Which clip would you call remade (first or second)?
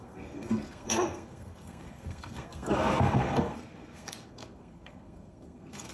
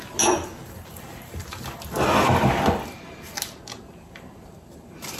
first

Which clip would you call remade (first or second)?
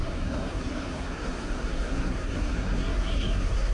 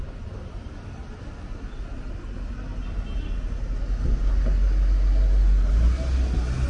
first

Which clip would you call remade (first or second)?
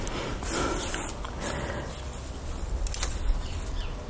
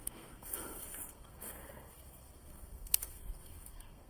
second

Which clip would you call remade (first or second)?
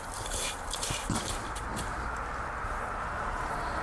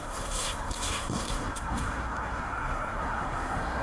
second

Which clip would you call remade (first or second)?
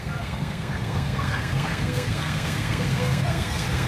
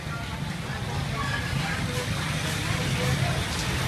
first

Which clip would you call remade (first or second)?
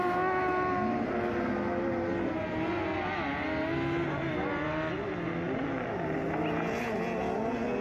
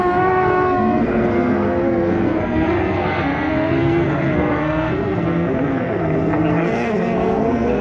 second